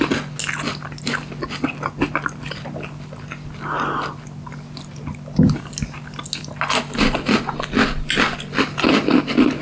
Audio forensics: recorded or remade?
recorded